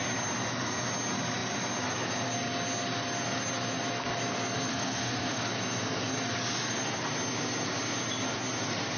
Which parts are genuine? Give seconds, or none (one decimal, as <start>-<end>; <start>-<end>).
0.0-4.7; 5.5-9.0